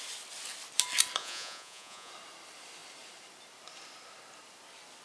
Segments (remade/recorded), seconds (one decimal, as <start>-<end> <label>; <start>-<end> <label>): 0.0-1.2 recorded; 1.2-2.1 remade; 2.1-5.0 recorded